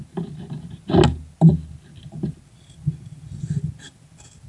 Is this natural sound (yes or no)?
yes